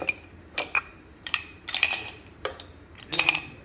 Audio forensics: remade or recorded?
remade